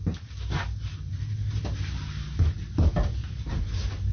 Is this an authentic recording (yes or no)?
yes